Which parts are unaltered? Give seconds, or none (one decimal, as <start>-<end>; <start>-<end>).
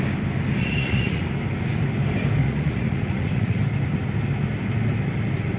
0.0-0.6; 1.2-2.4; 3.6-5.6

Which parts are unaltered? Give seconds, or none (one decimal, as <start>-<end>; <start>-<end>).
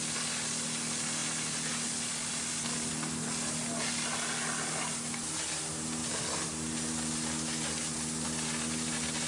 0.0-9.3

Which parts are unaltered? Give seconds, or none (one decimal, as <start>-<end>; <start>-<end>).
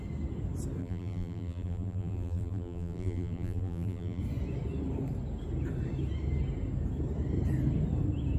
0.0-0.8; 4.2-8.4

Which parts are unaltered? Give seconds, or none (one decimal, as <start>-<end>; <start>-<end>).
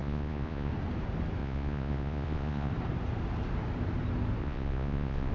0.7-1.4; 2.7-4.4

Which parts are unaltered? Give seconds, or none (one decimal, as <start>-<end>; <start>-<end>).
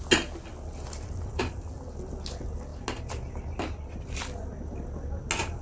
0.0-5.6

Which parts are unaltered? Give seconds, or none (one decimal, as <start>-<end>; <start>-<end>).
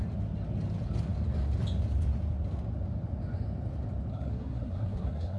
0.0-4.1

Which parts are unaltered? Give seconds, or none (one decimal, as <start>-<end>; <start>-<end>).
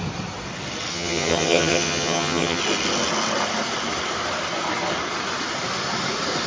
0.0-0.9; 2.6-6.5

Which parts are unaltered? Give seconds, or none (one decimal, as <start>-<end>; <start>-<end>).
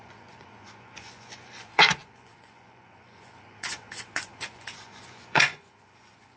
none